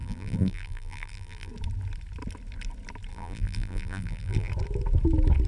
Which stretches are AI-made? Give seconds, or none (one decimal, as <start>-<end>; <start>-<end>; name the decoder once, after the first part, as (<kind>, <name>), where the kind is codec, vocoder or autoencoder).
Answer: 0.0-1.5 (vocoder, BigVGAN v2); 3.1-4.5